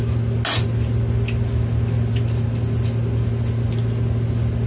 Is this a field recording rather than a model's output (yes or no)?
yes